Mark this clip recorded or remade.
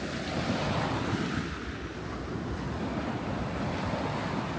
recorded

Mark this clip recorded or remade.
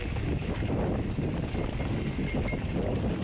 recorded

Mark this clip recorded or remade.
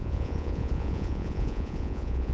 remade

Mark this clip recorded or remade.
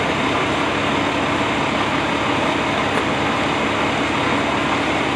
recorded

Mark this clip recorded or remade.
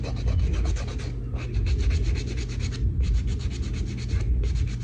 recorded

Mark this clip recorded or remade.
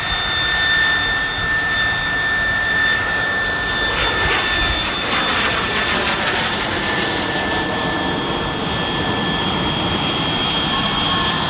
recorded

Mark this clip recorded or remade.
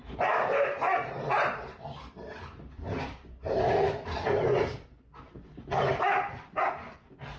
recorded